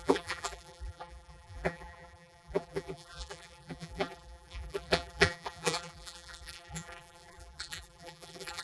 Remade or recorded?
remade